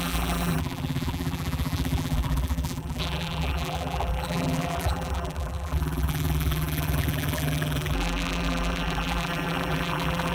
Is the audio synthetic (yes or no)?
yes